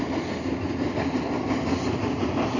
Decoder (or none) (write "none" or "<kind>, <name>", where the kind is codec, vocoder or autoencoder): none